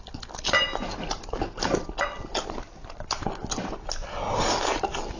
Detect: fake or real real